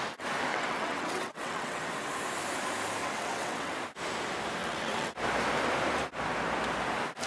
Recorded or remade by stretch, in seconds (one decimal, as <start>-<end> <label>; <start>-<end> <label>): 0.0-0.5 recorded; 0.5-1.9 remade; 1.9-3.0 recorded; 3.0-3.7 remade; 3.7-4.6 recorded; 4.6-5.1 remade; 5.1-7.3 recorded